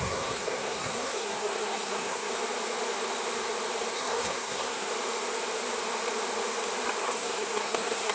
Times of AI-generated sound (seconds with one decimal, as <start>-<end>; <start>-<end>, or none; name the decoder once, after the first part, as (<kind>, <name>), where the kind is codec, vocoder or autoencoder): 0.0-2.3 (codec, SNAC); 3.9-4.9; 7.0-8.1